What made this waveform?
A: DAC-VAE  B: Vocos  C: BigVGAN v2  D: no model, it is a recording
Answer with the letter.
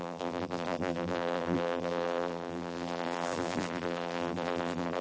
C